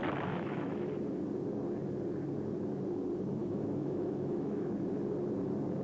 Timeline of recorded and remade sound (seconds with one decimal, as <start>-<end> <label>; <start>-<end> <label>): 0.0-0.9 remade; 0.9-3.4 recorded; 3.4-4.7 remade; 4.7-5.8 recorded